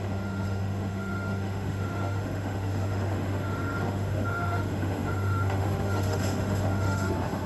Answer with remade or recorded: remade